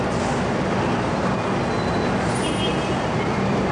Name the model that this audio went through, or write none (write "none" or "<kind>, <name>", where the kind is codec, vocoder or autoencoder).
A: none